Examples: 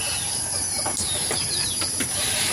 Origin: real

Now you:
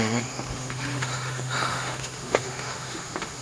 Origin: fake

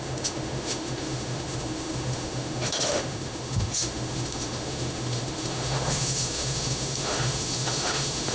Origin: fake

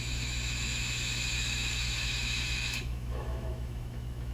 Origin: fake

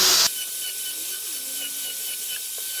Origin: real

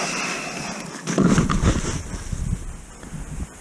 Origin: real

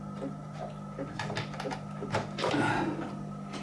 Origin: real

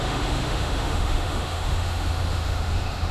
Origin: fake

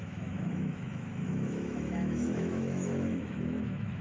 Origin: fake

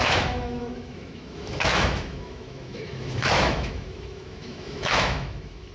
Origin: fake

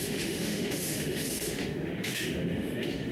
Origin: fake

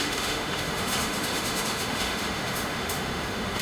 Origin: fake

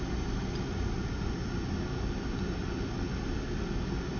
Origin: real